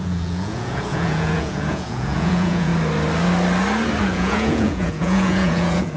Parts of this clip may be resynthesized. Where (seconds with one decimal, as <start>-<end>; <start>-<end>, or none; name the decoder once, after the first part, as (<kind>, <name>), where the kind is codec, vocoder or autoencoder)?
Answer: 0.0-2.7 (vocoder, Vocos); 4.0-6.0